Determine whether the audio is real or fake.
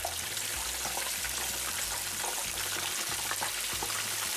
real